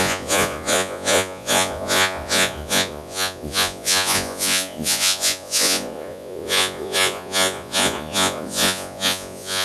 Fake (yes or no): yes